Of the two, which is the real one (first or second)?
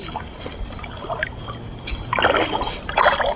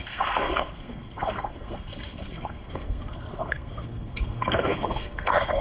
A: first